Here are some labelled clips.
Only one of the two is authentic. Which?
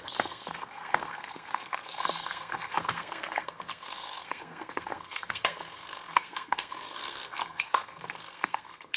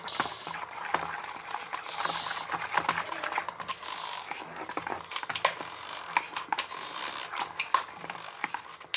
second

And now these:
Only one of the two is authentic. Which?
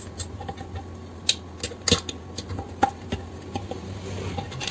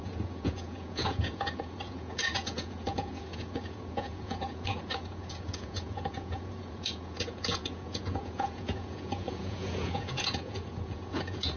first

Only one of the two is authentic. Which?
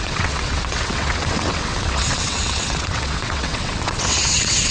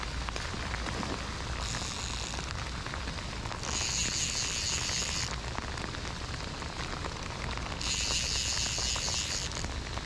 second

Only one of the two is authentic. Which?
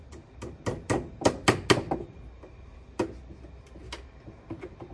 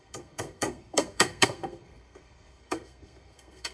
first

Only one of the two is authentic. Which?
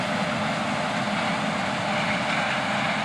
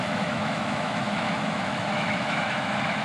first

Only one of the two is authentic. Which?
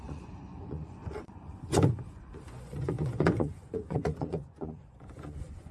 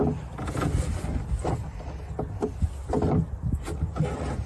second